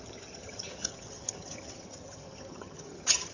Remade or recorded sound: remade